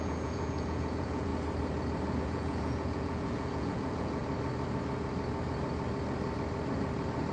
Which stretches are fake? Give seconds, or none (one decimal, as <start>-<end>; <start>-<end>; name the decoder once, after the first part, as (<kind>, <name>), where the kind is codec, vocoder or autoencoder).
0.0-1.3 (vocoder, Vocos); 2.2-4.2